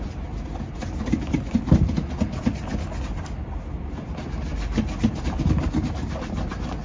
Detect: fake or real real